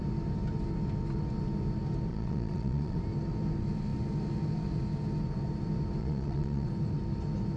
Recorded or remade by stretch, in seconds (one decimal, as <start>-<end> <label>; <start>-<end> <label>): 0.0-2.1 recorded; 2.1-3.0 remade; 3.0-6.0 recorded; 6.0-6.7 remade; 6.7-7.6 recorded